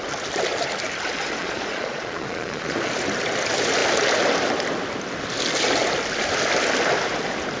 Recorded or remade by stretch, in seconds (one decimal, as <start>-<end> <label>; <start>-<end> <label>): 0.0-1.4 recorded; 1.4-2.9 remade; 2.9-7.6 recorded

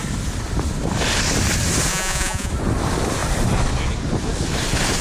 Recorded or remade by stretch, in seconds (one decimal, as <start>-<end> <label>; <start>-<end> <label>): 0.0-1.9 recorded; 1.9-2.5 remade; 2.5-5.0 recorded

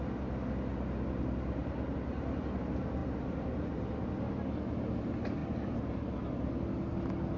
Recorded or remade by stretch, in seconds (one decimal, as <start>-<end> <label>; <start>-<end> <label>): 0.0-1.6 recorded; 1.6-2.4 remade; 2.4-7.4 recorded

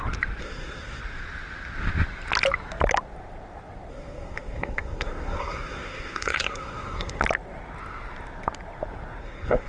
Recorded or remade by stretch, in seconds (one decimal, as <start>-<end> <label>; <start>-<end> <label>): 0.0-0.4 recorded; 0.4-1.0 remade; 1.0-3.9 recorded; 3.9-7.2 remade; 7.2-9.2 recorded; 9.2-9.7 remade

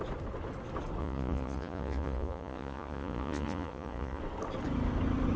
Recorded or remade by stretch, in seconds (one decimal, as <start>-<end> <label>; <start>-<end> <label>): 0.0-1.0 recorded; 1.0-4.2 remade; 4.2-5.4 recorded

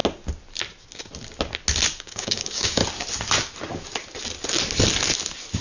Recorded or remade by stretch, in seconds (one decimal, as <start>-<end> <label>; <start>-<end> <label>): 0.0-2.0 recorded; 2.0-2.8 remade; 2.8-5.6 recorded

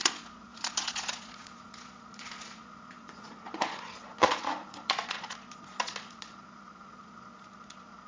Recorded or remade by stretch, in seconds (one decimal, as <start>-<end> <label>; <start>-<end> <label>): 0.0-8.1 remade